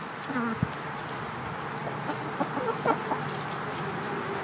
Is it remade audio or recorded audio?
recorded